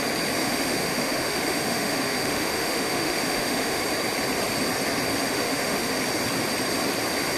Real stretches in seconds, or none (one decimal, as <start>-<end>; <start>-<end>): 0.0-0.4; 3.8-5.2; 6.0-7.4